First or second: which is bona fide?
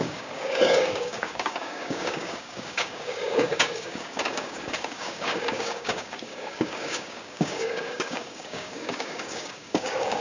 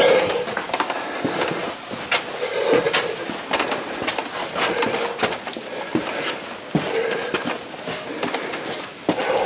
second